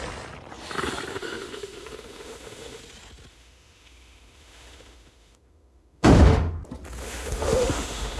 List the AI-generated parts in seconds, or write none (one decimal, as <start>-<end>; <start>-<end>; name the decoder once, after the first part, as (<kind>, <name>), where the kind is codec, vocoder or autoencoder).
1.1-2.8 (autoencoder, DAC-VAE); 3.3-6.6; 7.0-8.2